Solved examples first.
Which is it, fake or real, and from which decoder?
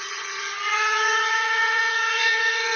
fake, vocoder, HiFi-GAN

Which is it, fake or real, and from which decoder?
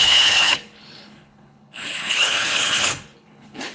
fake, codec, HILCodec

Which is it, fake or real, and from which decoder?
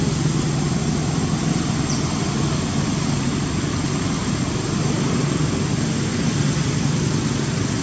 real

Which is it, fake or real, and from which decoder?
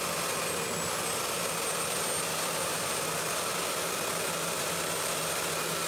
real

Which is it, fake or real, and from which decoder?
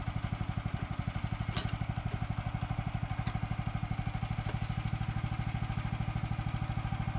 real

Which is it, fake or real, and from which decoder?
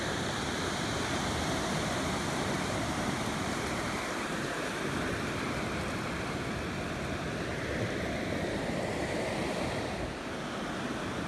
real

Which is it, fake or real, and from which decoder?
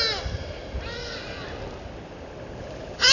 real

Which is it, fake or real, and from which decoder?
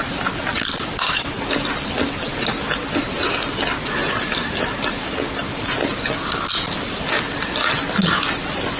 real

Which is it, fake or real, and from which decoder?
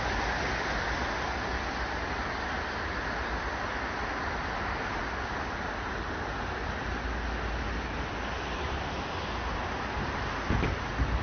real